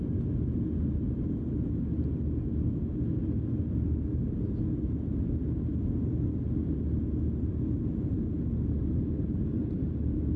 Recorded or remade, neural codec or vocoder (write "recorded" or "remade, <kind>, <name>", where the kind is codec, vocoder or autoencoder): recorded